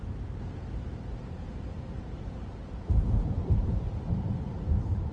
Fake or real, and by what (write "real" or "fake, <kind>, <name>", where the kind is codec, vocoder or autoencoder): fake, vocoder, BigVGAN v2